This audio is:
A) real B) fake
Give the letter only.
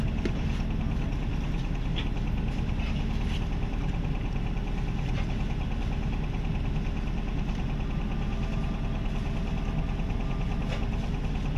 A